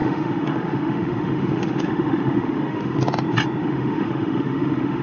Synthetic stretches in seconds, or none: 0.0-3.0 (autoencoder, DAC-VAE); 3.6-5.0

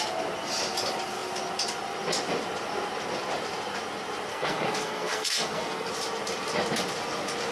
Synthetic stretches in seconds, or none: 4.3-5.9 (codec, SNAC)

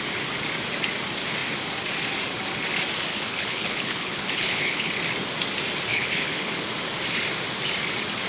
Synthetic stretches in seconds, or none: 3.1-4.9 (codec, HILCodec); 5.9-6.6